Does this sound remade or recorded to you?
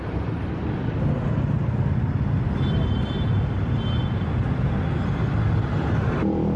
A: recorded